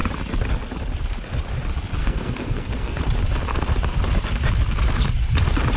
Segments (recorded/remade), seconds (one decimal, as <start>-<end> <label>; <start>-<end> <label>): 0.0-2.0 recorded; 2.0-3.0 remade; 3.0-5.8 recorded